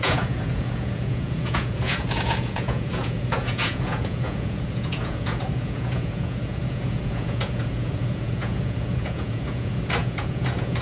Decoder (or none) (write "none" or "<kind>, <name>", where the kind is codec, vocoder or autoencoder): vocoder, Vocos